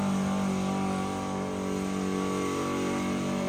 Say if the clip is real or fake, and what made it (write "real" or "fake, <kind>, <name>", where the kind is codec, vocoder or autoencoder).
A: real